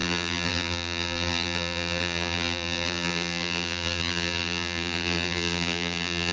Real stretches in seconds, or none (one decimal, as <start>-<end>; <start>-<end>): none